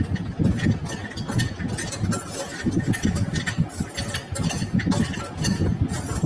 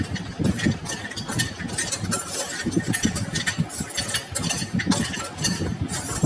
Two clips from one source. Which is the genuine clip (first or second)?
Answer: first